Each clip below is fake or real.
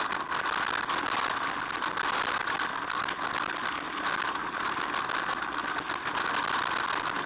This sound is real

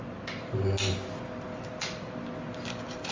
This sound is real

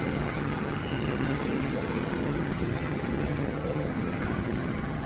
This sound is fake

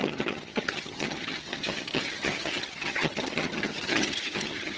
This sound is fake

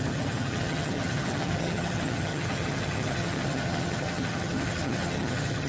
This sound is fake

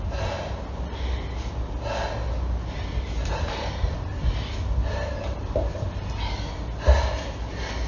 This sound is real